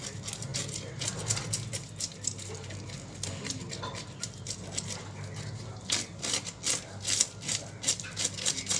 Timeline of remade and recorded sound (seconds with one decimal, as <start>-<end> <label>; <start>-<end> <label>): 0.0-8.8 recorded